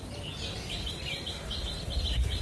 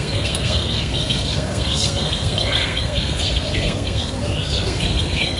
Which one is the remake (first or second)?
second